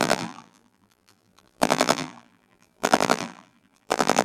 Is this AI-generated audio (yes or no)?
yes